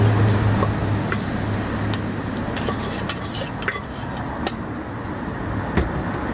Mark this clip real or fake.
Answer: real